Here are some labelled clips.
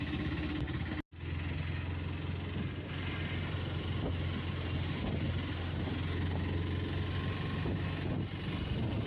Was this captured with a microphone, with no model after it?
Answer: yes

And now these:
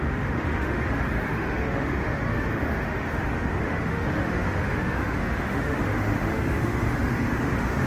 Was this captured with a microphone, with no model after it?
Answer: no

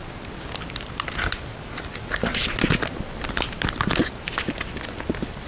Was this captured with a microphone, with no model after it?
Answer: yes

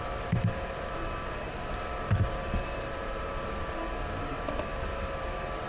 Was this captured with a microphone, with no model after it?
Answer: no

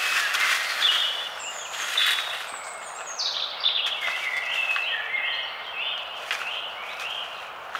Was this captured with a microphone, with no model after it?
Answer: yes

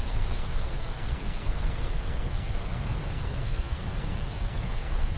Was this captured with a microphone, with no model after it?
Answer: no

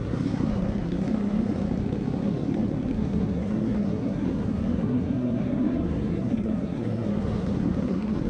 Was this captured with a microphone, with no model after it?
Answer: no